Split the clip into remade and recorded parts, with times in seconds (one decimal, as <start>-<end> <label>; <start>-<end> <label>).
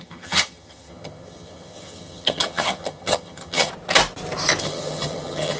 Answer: 0.0-3.7 remade; 3.7-4.6 recorded; 4.6-5.6 remade